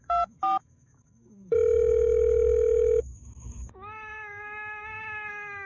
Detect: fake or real fake